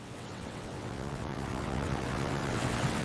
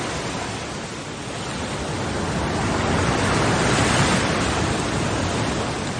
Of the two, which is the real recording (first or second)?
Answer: second